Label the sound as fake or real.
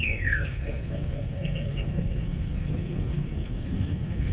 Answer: fake